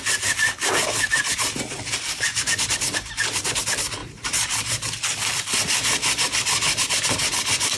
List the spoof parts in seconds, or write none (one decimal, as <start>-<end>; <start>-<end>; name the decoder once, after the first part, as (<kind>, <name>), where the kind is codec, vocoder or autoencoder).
2.3-3.4 (vocoder, BigVGAN v2); 4.0-4.9